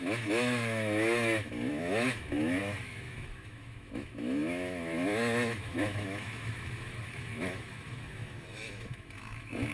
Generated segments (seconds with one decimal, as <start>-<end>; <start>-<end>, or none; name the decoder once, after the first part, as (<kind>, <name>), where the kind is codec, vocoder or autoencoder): 0.0-9.7 (autoencoder, DAC-VAE)